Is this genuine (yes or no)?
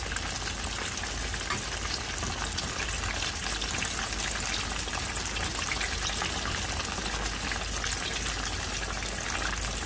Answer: yes